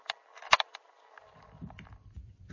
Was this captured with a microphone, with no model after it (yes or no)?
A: no